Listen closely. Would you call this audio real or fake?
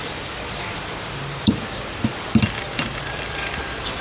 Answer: fake